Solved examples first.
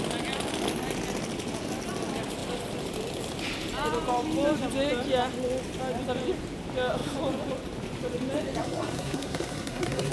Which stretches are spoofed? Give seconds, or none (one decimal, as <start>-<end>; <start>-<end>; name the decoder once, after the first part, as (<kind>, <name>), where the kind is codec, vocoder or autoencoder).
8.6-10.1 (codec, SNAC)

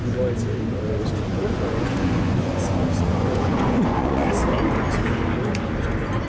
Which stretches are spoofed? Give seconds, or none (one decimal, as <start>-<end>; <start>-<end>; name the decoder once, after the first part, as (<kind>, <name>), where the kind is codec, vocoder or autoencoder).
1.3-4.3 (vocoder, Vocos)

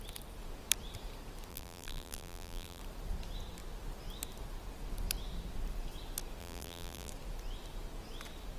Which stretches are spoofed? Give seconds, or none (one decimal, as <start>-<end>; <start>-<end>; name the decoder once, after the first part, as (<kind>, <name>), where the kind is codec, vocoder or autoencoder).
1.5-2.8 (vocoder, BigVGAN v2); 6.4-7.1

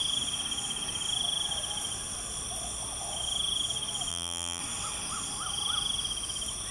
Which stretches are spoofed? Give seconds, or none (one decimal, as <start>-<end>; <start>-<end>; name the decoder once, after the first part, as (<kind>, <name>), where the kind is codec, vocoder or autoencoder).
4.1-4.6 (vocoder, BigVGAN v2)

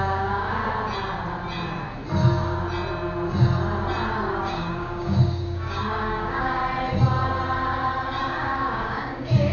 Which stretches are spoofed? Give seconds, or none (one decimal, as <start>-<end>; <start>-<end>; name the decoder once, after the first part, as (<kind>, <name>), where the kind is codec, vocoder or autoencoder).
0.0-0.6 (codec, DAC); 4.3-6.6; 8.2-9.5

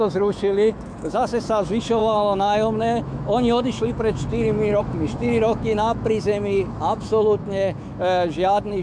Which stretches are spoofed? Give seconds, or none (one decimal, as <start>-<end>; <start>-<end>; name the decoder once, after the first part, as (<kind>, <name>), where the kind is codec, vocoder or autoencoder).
0.0-8.8 (autoencoder, DAC-VAE)

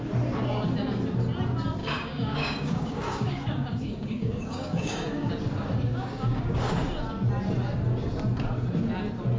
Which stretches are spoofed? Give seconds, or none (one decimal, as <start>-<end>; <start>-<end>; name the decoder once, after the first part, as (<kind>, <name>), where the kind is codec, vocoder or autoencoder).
1.8-5.3 (codec, DAC); 5.9-6.7

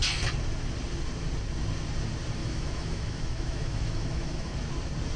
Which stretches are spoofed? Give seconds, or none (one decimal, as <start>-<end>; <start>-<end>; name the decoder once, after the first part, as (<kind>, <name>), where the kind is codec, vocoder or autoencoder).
2.4-4.6 (autoencoder, DAC-VAE)